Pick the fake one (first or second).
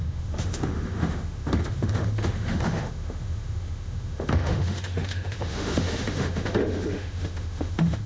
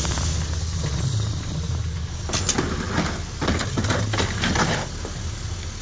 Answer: first